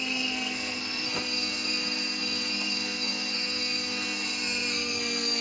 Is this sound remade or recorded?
remade